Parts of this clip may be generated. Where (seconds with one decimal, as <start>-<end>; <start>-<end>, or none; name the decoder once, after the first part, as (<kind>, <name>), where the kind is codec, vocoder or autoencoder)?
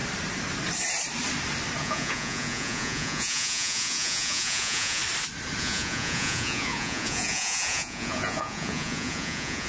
1.8-5.0 (vocoder, Vocos); 5.6-9.7